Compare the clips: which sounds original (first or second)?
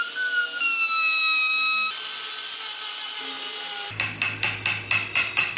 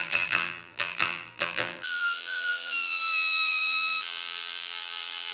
first